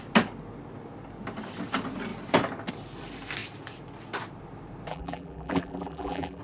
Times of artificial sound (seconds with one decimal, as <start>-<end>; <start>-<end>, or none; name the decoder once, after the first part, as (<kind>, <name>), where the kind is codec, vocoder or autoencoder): 4.9-6.4 (vocoder, BigVGAN v2)